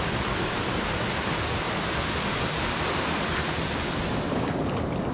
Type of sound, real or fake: real